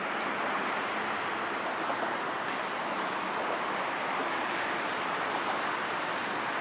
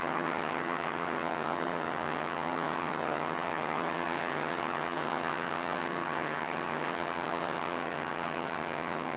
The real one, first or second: first